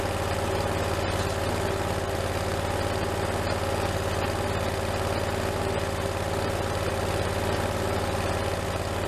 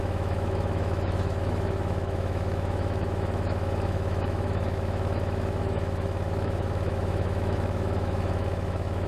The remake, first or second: second